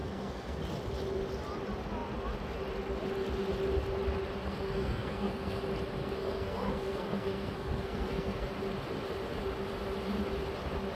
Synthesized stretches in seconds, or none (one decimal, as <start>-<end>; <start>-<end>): 0.0-0.6; 4.5-5.6; 6.0-8.5